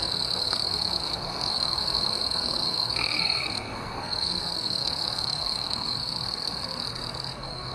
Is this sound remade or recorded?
remade